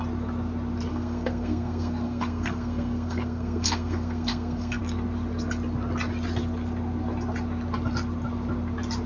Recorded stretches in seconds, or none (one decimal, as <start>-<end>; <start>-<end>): 0.0-0.9; 4.8-9.1